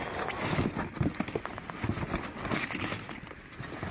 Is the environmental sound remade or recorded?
recorded